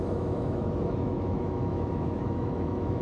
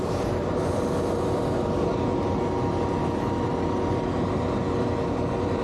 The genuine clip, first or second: second